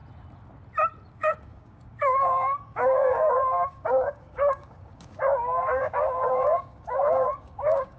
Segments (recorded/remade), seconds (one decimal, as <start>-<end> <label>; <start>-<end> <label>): 0.0-1.1 recorded; 1.1-8.0 remade